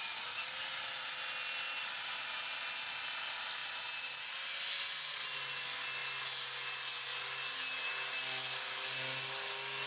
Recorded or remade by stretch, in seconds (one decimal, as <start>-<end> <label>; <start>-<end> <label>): 0.0-9.9 recorded